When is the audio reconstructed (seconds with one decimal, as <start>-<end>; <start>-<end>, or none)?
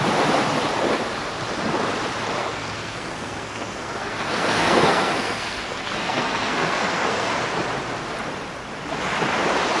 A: 2.4-7.4